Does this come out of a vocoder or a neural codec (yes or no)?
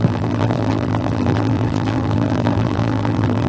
yes